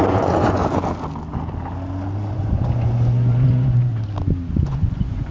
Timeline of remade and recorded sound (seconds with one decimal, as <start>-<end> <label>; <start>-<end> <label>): 0.0-0.6 remade; 0.6-2.3 recorded; 2.3-3.9 remade; 3.9-4.5 recorded; 4.5-5.3 remade